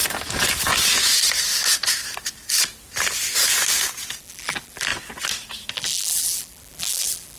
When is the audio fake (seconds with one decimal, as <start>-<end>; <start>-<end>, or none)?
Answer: 4.2-4.9; 5.7-7.4